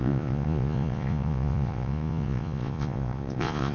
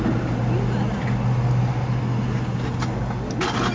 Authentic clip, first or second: second